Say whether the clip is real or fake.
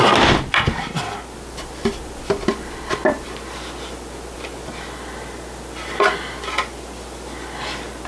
real